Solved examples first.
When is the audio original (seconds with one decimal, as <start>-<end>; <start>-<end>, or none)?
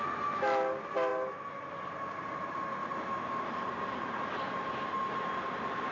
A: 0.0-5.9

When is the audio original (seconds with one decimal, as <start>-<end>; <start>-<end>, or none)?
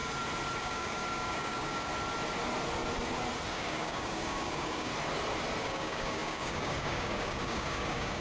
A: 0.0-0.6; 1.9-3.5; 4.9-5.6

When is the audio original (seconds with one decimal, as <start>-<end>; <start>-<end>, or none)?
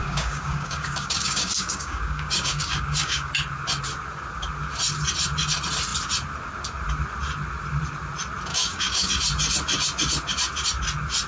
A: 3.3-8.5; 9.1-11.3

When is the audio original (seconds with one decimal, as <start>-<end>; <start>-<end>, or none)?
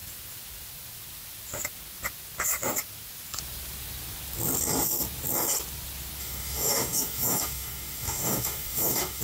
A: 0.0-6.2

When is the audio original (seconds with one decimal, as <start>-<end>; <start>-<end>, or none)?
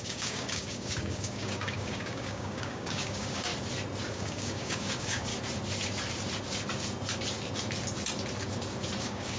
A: 3.5-4.1; 5.3-9.0